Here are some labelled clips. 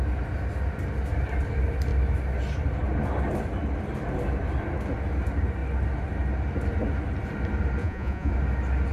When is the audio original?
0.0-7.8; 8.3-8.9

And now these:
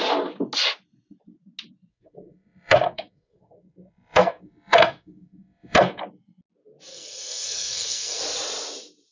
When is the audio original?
0.0-1.9; 6.0-6.9; 8.2-9.1